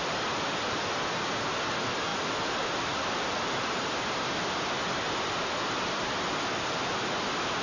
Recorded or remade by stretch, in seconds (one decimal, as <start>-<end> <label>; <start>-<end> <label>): 0.0-7.6 recorded